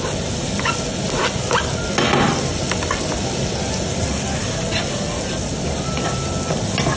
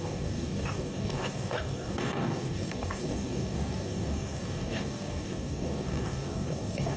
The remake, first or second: second